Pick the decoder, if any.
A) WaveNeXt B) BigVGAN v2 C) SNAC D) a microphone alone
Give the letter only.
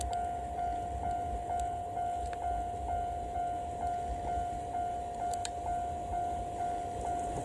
D